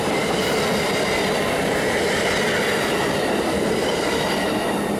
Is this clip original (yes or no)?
yes